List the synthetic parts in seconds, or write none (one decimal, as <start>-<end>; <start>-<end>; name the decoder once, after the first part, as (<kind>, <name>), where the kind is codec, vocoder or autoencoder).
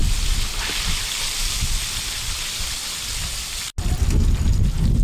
2.0-3.7 (vocoder, BigVGAN v2); 4.4-5.0